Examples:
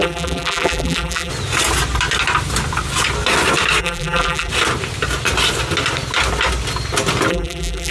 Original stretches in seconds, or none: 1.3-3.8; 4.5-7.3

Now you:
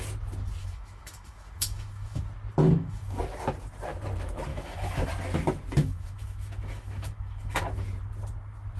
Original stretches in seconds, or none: 0.0-0.6; 2.2-2.6; 3.2-4.5; 5.1-5.8; 7.6-8.8

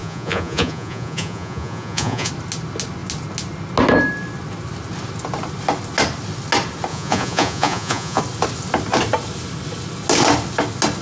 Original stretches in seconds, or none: 2.3-6.9; 8.2-11.0

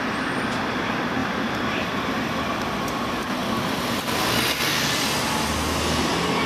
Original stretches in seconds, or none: 0.0-1.2; 1.9-6.5

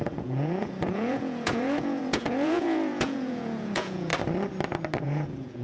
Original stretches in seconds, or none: 4.1-5.0

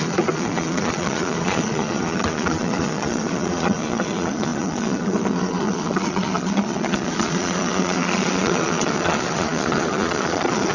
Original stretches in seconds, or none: none

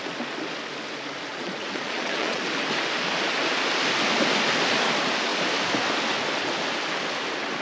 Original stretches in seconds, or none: 0.0-1.3; 2.4-7.6